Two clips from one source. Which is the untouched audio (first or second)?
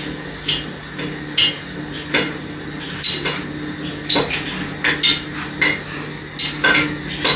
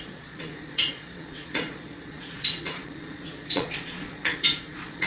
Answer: first